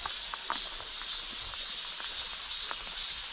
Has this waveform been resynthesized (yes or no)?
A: no